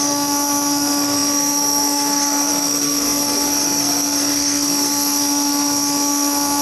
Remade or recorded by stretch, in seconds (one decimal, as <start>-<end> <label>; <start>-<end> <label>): 0.0-6.6 remade